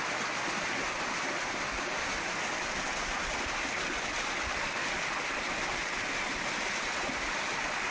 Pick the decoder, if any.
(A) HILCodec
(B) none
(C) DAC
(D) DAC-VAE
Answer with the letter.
B